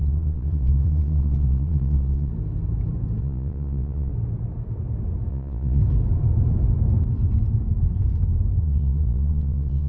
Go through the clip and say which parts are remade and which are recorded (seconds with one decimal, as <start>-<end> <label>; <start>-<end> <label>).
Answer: 0.0-2.3 remade; 2.3-3.2 recorded; 3.2-4.1 remade; 4.1-5.3 recorded; 5.3-5.8 remade; 5.8-8.6 recorded; 8.6-9.9 remade